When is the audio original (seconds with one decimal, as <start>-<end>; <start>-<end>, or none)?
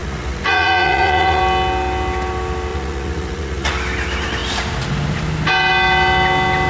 1.4-2.7; 3.7-6.7